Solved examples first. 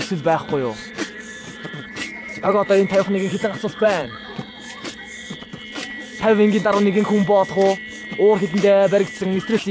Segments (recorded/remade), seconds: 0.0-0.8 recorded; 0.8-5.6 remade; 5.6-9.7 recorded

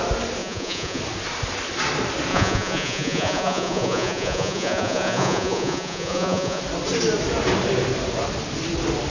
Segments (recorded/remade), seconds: 0.0-0.4 recorded; 0.4-1.0 remade; 1.0-2.3 recorded; 2.3-6.6 remade; 6.6-9.1 recorded

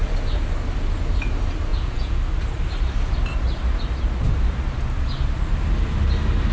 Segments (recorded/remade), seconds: 0.0-1.7 recorded; 1.7-2.2 remade; 2.2-6.5 recorded

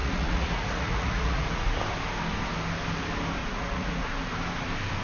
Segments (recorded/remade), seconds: 0.0-1.8 remade; 1.8-3.4 recorded; 3.4-4.3 remade; 4.3-5.0 recorded

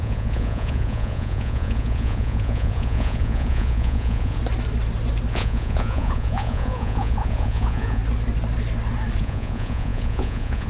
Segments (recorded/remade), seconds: 0.0-4.4 remade; 4.4-5.3 recorded; 5.3-8.0 remade; 8.0-9.2 recorded; 9.2-10.7 remade

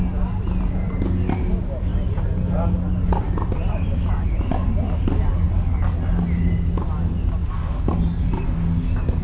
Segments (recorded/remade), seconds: 0.0-9.2 recorded